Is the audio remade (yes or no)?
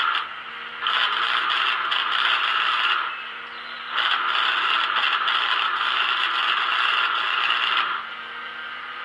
no